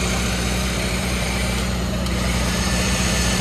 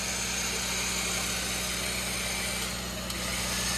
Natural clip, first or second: second